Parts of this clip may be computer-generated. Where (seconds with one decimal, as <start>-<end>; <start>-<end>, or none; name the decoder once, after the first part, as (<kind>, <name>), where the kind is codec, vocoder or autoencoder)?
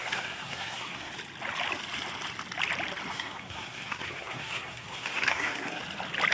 0.0-1.1 (codec, SNAC); 3.1-5.8